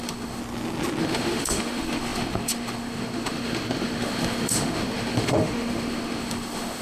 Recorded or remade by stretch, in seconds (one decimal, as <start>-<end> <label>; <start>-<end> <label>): 0.0-0.4 remade; 0.4-1.0 recorded; 1.0-6.8 remade